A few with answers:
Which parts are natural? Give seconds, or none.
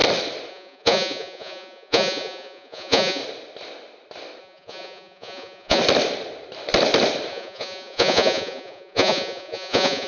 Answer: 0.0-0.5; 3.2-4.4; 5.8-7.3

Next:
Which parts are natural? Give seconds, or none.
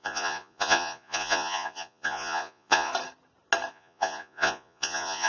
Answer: 2.9-3.7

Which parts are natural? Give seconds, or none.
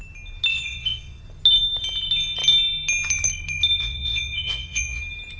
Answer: 0.0-0.5; 1.2-3.8; 5.0-5.4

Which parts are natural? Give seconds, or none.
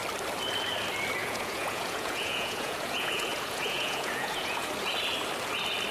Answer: 0.0-1.2; 4.7-5.9